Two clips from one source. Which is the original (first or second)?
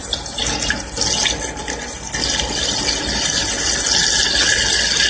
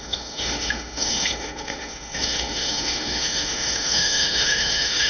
first